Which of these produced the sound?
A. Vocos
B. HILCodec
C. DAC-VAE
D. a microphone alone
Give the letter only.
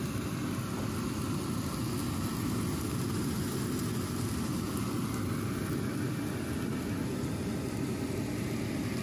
D